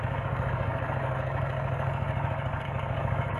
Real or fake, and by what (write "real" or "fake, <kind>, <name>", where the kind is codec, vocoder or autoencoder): fake, codec, DAC